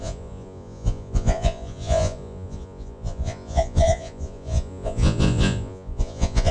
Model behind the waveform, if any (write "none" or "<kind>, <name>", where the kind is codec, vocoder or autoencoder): vocoder, Vocos